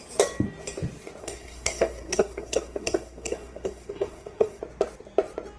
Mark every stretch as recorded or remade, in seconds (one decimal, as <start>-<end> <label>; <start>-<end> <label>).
0.0-1.2 recorded; 1.2-4.6 remade; 4.6-5.6 recorded